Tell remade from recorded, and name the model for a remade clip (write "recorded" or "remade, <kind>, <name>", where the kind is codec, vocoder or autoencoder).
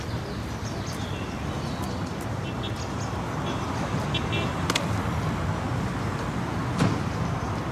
recorded